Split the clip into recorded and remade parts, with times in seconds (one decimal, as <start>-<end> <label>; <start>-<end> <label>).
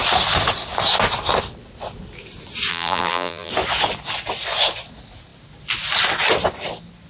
0.0-2.7 recorded; 2.7-3.5 remade; 3.5-7.1 recorded